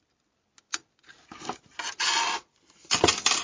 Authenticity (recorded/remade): recorded